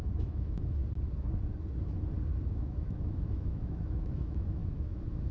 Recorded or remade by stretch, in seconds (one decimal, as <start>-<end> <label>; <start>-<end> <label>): 0.0-0.8 remade; 0.8-2.5 recorded; 2.5-5.3 remade